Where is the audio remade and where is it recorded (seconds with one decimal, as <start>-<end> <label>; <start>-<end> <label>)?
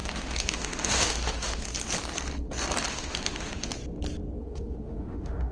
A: 0.0-1.7 remade; 1.7-2.9 recorded; 2.9-3.7 remade; 3.7-4.4 recorded; 4.4-5.5 remade